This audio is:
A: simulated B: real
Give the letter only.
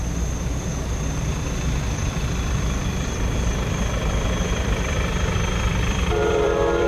A